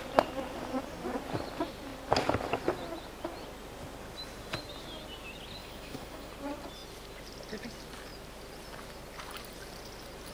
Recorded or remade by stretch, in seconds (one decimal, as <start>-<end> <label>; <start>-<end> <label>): 0.0-5.6 recorded; 5.6-6.3 remade; 6.3-10.3 recorded